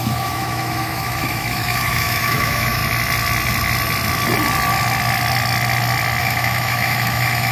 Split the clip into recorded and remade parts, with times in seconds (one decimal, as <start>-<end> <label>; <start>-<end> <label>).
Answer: 0.0-2.8 remade; 2.8-6.2 recorded; 6.2-7.5 remade